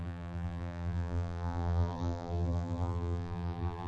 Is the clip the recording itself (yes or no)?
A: no